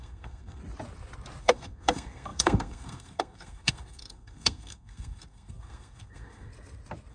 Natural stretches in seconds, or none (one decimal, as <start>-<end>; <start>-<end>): 0.6-1.4; 6.5-7.1